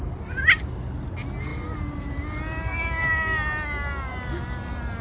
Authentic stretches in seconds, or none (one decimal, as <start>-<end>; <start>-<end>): 0.0-5.0